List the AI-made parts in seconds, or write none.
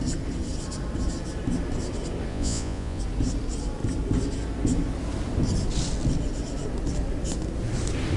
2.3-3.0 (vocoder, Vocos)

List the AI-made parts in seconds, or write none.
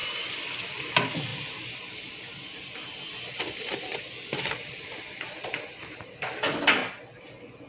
none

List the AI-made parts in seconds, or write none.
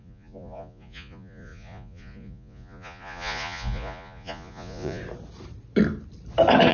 0.0-5.0 (vocoder, Vocos)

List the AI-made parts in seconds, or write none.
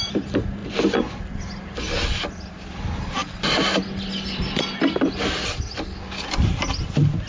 none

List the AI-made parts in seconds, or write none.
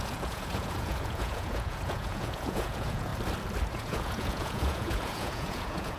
0.0-3.1 (vocoder, Vocos); 3.7-6.0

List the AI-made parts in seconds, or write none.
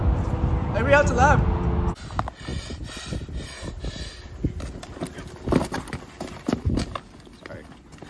none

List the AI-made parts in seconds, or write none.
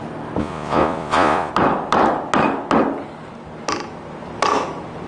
0.4-1.5 (vocoder, Vocos)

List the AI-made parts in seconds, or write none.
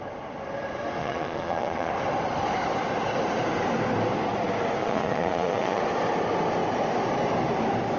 1.0-1.9 (vocoder, Vocos); 4.8-5.8